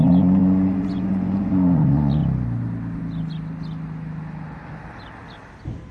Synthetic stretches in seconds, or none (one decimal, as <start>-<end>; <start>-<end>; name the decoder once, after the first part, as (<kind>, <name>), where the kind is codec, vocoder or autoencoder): 0.0-2.2 (vocoder, Vocos)